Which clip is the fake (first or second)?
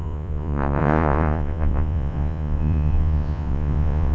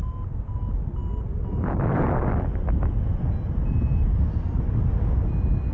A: first